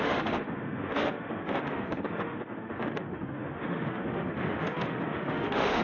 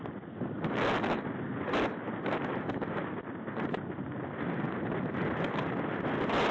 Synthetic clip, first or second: first